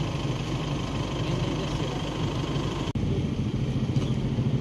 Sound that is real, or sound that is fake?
fake